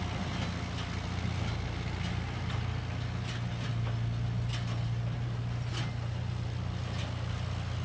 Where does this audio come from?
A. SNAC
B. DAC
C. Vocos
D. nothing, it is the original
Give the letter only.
D